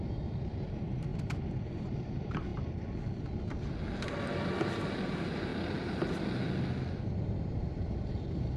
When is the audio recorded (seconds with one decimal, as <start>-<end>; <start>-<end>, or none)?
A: 2.5-5.0; 5.5-7.0